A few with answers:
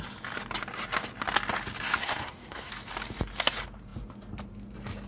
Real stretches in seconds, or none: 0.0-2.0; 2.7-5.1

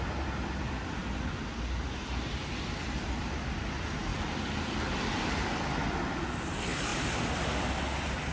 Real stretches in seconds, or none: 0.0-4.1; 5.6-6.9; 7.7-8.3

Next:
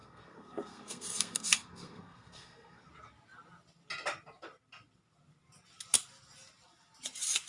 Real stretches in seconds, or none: 2.9-7.5